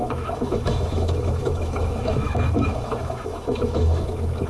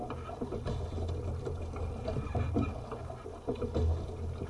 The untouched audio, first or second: second